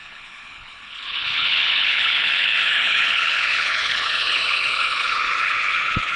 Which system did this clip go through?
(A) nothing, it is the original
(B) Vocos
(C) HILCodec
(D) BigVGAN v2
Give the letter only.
C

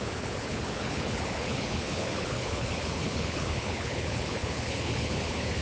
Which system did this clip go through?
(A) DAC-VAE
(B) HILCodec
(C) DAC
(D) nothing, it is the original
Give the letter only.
B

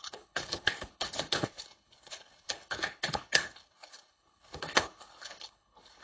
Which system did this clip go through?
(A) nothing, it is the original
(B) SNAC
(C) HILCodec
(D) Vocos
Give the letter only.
C